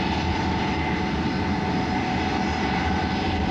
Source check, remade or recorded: recorded